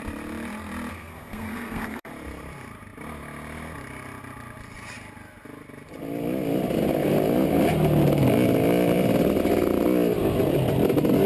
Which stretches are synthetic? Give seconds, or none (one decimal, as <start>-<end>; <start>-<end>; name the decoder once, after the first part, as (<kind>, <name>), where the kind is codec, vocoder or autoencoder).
0.9-2.1 (codec, SNAC)